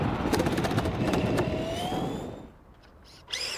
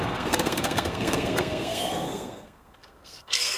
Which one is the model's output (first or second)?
second